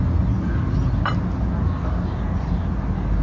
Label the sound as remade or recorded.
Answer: recorded